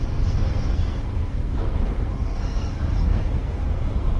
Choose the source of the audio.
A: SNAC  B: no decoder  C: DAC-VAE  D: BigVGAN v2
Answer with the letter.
A